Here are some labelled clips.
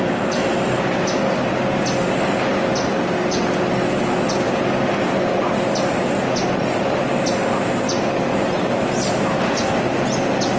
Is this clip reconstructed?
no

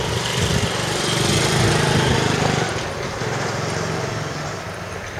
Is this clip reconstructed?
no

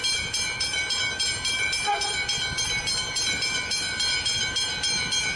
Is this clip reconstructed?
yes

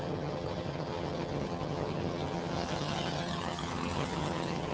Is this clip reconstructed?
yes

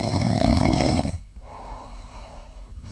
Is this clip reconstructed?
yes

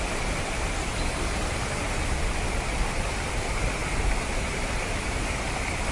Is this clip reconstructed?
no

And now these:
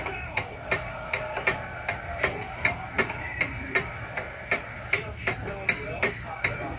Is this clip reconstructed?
no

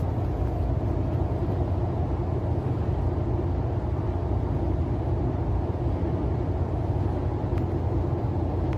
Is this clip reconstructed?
no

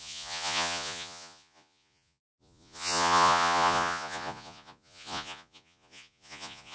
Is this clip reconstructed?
yes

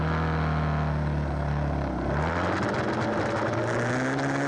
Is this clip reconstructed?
no